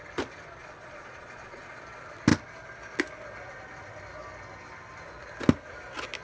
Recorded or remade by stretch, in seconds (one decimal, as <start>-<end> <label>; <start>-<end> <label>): 0.0-0.6 recorded; 0.6-1.8 remade; 1.8-6.2 recorded

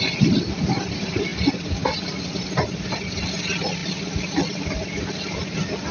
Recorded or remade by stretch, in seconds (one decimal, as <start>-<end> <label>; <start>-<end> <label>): 0.0-5.9 recorded

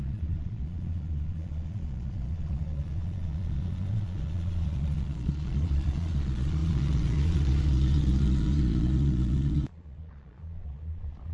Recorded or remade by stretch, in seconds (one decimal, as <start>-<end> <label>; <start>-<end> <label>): 0.0-11.3 remade